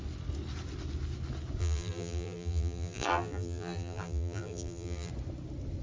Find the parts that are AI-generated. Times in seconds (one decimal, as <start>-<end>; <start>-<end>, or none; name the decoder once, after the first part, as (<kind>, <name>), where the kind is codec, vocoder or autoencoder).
1.6-5.1 (vocoder, BigVGAN v2)